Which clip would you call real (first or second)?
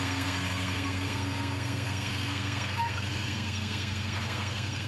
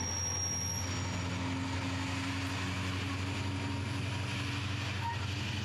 second